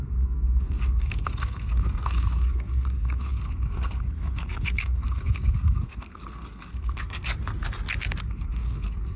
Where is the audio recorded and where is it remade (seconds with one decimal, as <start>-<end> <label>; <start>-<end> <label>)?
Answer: 0.0-7.3 remade; 7.3-8.2 recorded; 8.2-9.2 remade